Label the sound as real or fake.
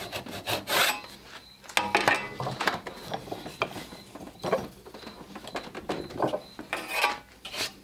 real